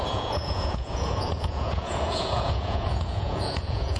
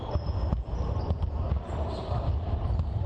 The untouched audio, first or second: second